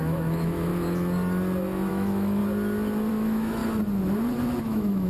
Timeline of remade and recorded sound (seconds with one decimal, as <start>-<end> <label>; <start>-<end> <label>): 0.0-0.7 remade; 0.7-1.9 recorded; 1.9-2.4 remade; 2.4-3.1 recorded; 3.1-3.6 remade; 3.6-4.6 recorded; 4.6-5.1 remade